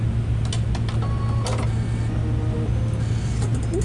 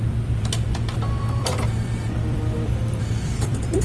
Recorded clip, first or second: first